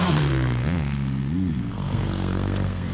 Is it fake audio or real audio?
fake